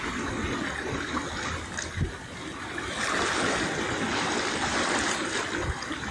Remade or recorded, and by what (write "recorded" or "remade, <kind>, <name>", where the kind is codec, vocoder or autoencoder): recorded